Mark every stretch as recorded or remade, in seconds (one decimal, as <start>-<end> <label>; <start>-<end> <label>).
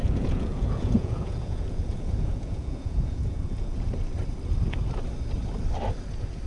0.0-3.9 remade; 3.9-6.5 recorded